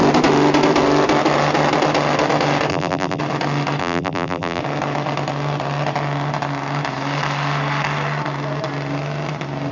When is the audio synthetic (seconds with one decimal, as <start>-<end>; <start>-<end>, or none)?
2.7-3.2; 3.8-4.6